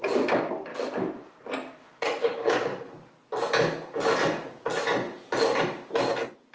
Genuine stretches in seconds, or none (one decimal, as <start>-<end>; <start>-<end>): 0.7-2.2; 2.7-6.5